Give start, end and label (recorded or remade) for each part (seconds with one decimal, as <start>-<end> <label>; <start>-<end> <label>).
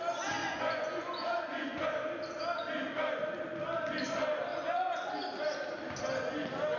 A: 0.0-0.4 recorded; 0.4-1.9 remade; 1.9-4.5 recorded; 4.5-5.1 remade; 5.1-6.8 recorded